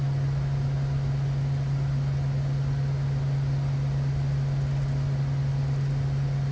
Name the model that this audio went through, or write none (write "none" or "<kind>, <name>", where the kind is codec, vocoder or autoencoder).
none